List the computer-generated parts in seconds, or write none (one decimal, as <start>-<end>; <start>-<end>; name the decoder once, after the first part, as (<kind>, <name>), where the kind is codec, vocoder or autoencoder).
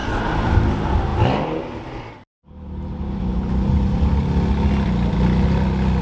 none